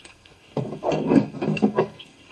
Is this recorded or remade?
remade